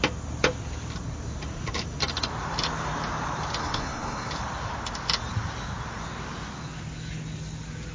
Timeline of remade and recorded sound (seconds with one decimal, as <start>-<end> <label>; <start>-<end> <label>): 0.0-3.6 recorded; 3.6-4.3 remade; 4.3-7.9 recorded